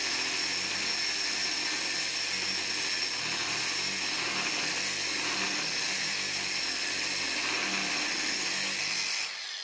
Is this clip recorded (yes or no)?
yes